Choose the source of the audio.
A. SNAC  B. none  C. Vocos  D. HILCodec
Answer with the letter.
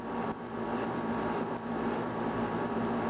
B